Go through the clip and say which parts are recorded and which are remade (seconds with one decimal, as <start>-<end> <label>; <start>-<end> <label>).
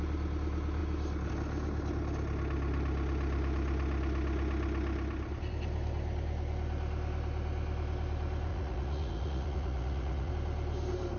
0.0-8.5 recorded; 8.5-10.3 remade; 10.3-11.2 recorded